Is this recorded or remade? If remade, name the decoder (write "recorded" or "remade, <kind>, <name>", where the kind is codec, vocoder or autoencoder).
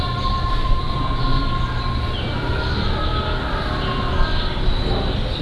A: recorded